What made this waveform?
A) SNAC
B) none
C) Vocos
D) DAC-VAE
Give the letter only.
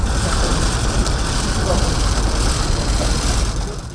B